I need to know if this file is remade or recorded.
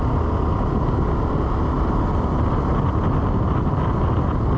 recorded